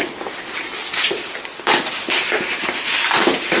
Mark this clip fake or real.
real